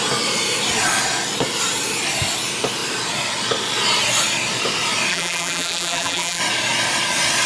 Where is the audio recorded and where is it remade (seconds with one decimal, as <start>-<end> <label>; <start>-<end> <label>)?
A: 0.0-5.1 recorded; 5.1-6.4 remade; 6.4-7.5 recorded

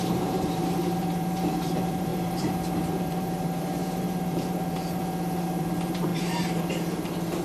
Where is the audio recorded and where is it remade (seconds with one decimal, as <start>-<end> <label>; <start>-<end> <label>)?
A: 0.0-5.0 remade; 5.0-5.6 recorded; 5.6-7.4 remade

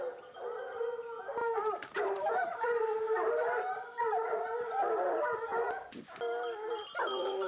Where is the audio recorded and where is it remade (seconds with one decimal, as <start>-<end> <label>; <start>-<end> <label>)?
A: 0.0-1.4 recorded; 1.4-3.3 remade; 3.3-7.5 recorded

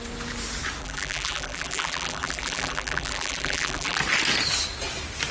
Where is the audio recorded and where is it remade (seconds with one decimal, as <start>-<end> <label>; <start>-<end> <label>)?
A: 0.0-0.8 recorded; 0.8-4.0 remade; 4.0-5.3 recorded

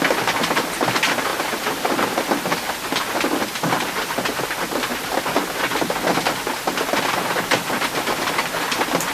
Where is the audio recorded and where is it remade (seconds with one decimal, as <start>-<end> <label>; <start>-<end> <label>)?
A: 0.0-1.3 recorded; 1.3-1.9 remade; 1.9-9.1 recorded

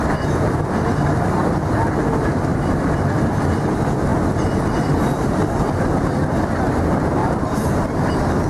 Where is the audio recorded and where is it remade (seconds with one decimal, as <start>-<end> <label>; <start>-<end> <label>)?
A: 0.0-7.2 recorded; 7.2-8.1 remade; 8.1-8.5 recorded

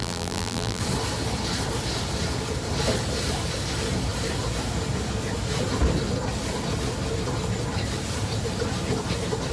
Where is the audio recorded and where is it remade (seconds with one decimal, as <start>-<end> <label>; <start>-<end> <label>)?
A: 0.0-0.8 remade; 0.8-9.5 recorded

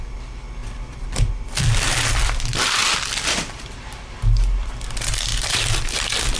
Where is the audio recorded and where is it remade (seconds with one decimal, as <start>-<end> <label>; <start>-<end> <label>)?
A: 0.0-6.4 remade